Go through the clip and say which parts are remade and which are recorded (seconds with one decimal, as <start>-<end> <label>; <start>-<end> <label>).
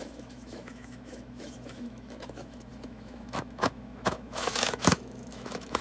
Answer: 0.0-5.8 remade